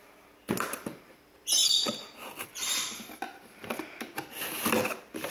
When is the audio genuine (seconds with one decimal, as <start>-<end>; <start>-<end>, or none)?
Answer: 0.0-5.3